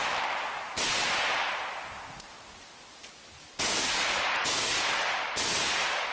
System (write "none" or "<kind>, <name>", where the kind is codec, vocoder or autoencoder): none